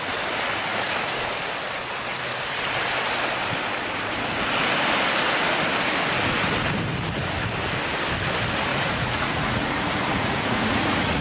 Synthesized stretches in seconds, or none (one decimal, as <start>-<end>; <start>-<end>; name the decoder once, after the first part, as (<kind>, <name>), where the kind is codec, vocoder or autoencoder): 8.7-11.2 (vocoder, Vocos)

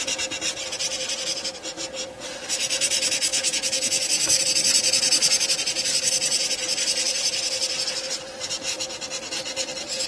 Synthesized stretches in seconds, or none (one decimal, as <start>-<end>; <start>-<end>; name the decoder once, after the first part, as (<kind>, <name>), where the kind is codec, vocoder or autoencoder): 3.3-4.4 (autoencoder, DAC-VAE)

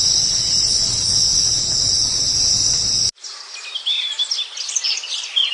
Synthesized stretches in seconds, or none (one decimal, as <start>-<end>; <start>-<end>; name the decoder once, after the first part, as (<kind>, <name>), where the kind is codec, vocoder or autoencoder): 0.0-1.3 (vocoder, BigVGAN v2); 4.6-5.5

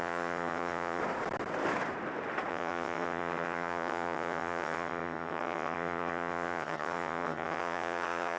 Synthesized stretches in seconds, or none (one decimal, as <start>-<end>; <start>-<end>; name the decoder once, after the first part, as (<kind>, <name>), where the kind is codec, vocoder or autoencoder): 0.0-1.0 (vocoder, HiFi-GAN); 2.5-8.4

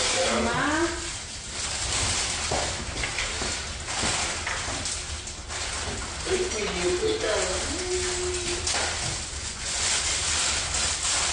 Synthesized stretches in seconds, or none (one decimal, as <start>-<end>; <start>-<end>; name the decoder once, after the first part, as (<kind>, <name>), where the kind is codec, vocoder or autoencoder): 9.4-10.0 (vocoder, Vocos)

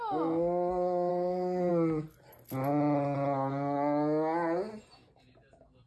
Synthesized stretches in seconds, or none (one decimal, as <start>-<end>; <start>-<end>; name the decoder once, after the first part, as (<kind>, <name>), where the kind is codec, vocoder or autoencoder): 1.1-1.7 (codec, SNAC)

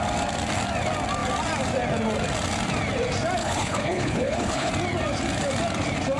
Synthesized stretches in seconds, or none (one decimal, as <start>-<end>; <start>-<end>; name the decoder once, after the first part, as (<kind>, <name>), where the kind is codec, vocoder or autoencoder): 3.4-4.7 (codec, HILCodec)

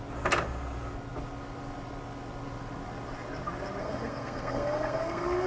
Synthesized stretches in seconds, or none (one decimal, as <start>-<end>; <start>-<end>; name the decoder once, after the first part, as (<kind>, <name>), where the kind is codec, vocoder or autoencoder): 3.8-5.5 (codec, SNAC)